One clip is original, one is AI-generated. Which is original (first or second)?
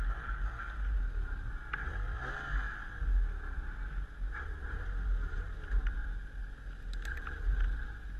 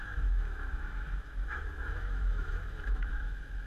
first